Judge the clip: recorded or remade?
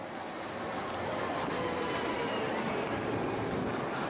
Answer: recorded